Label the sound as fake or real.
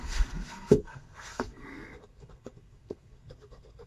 fake